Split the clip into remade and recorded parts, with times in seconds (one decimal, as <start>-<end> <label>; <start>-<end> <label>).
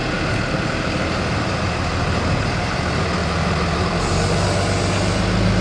0.0-3.2 recorded; 3.2-4.1 remade; 4.1-5.6 recorded